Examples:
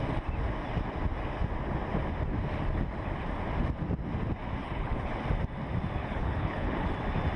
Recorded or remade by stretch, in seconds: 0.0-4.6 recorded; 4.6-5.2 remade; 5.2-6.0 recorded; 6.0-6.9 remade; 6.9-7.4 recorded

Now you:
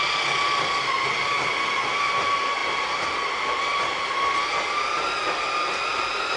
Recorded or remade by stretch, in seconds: 0.0-6.4 recorded

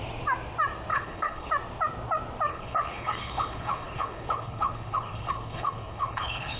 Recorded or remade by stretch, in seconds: 0.0-0.9 recorded; 0.9-1.5 remade; 1.5-2.5 recorded; 2.5-6.6 remade

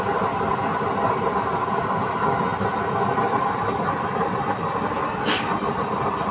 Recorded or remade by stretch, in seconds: 0.0-6.3 recorded

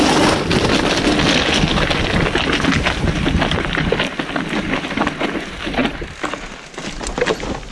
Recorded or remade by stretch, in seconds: 0.0-7.7 recorded

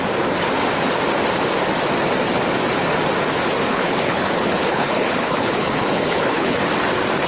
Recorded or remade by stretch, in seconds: 0.0-3.7 recorded; 3.7-6.6 remade; 6.6-7.3 recorded